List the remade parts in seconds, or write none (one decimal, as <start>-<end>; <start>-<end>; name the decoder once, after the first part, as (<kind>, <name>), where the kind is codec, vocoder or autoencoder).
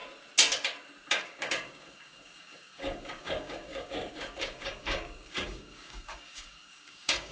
1.1-7.3 (codec, DAC)